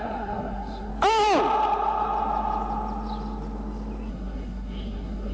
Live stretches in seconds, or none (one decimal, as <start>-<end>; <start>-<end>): 0.9-4.1